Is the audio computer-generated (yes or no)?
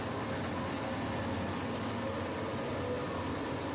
no